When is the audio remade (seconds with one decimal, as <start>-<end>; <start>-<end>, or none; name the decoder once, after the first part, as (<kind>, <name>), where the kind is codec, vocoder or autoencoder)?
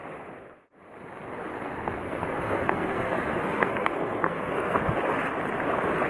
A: 1.5-4.8 (codec, SNAC)